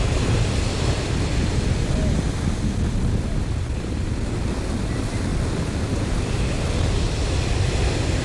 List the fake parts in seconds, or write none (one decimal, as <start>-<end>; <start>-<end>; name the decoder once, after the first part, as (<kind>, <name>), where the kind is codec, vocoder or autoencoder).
none